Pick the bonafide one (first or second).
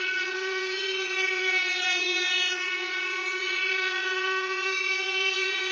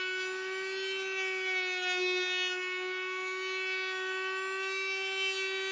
second